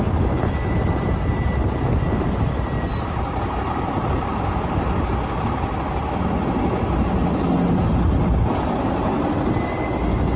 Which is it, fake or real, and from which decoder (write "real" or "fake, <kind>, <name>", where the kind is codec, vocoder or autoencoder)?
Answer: real